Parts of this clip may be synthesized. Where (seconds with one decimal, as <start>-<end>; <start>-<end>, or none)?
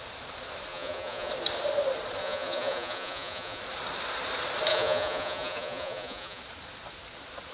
0.7-1.3; 2.2-3.6; 4.7-6.4